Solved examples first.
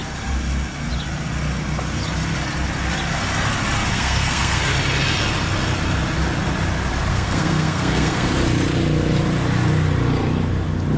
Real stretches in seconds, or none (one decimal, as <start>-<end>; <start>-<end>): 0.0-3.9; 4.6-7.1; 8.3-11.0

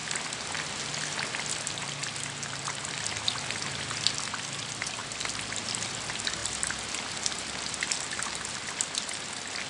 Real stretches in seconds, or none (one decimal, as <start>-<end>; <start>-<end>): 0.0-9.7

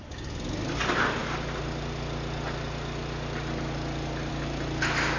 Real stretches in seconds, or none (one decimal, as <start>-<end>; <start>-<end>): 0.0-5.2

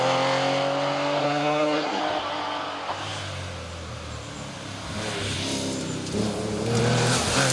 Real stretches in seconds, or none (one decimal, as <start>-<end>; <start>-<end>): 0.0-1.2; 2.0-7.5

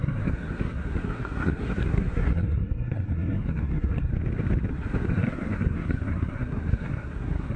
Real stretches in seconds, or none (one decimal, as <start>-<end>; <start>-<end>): 4.1-4.7

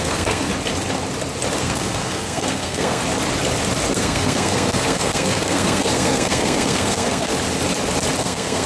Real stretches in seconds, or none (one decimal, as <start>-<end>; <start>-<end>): 0.5-1.6; 3.0-3.9; 7.3-8.2